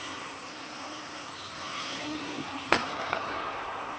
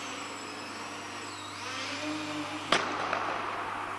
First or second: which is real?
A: second